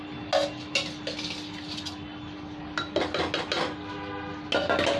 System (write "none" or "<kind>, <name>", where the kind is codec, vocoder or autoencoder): none